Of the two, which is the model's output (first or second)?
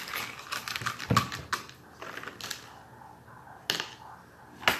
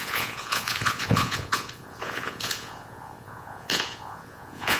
second